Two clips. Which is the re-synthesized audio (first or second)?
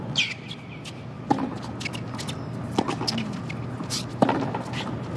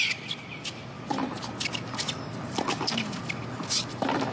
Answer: second